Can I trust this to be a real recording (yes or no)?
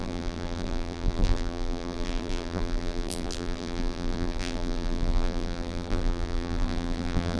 no